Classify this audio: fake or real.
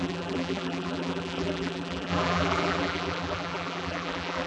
fake